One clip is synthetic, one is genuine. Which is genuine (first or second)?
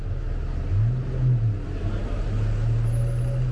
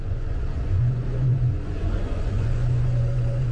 first